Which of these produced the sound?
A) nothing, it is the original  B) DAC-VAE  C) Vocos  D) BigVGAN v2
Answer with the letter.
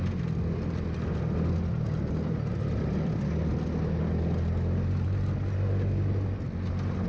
A